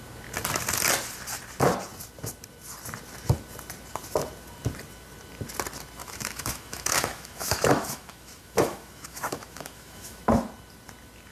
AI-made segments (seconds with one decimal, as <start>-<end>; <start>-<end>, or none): 6.0-10.2